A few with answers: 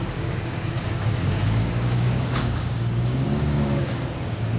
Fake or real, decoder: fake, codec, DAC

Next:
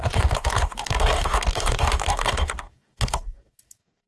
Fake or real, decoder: fake, codec, DAC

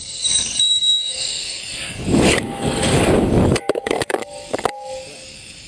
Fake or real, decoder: fake, codec, DAC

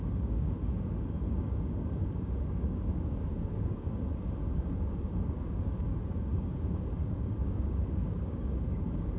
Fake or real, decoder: fake, codec, DAC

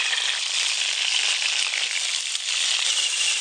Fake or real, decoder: real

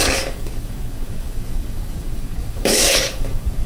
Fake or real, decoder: fake, codec, DAC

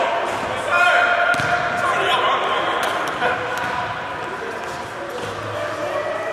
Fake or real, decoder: real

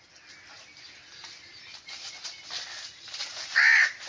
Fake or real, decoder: real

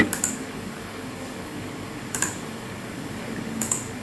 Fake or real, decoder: fake, codec, DAC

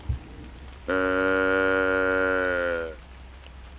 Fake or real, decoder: real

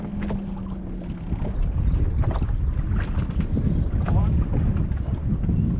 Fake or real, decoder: real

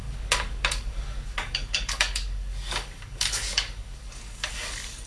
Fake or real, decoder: fake, codec, DAC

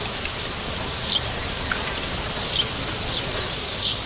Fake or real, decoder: real